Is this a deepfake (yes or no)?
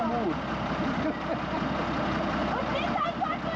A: no